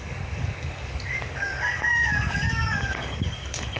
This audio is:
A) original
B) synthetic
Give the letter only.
B